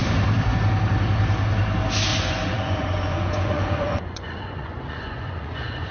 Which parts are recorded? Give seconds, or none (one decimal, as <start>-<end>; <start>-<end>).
0.0-2.1